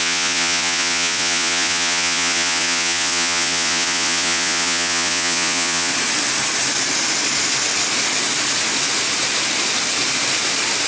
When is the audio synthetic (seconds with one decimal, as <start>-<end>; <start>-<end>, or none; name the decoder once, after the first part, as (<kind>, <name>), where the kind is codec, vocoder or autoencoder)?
0.0-5.9 (vocoder, Vocos)